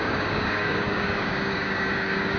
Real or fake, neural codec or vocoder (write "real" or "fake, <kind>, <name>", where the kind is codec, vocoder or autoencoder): fake, codec, DAC